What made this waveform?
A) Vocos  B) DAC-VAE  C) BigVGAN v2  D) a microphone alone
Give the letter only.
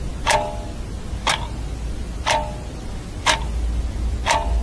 D